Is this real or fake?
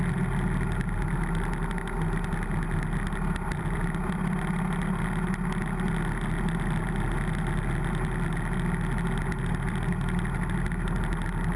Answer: real